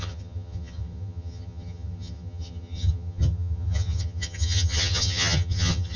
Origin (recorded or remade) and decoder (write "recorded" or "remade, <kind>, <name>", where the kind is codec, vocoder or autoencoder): remade, vocoder, HiFi-GAN